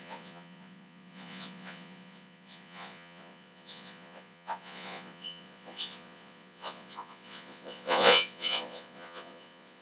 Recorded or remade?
remade